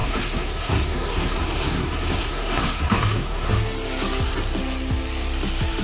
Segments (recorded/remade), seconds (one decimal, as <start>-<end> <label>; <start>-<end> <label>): 0.0-3.5 remade; 3.5-5.8 recorded